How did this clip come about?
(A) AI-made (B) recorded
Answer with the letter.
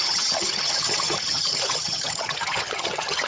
A